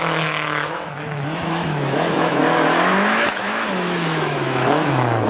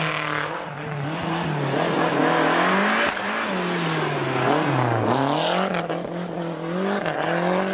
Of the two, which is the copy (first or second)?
first